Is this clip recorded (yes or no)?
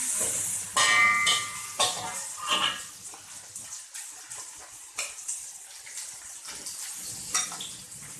yes